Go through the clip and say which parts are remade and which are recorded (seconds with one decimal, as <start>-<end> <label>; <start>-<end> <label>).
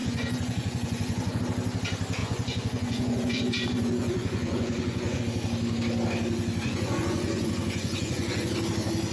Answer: 0.0-1.4 remade; 1.4-2.2 recorded; 2.2-5.2 remade; 5.2-6.6 recorded; 6.6-8.5 remade; 8.5-9.1 recorded